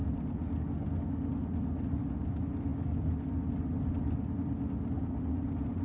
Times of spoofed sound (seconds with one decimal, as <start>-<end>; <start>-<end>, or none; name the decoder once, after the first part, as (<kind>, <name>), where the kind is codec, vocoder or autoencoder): none